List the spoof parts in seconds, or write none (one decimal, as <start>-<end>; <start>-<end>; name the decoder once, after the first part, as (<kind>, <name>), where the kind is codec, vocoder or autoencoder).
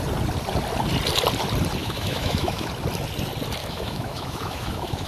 1.8-2.7 (autoencoder, DAC-VAE); 3.6-5.1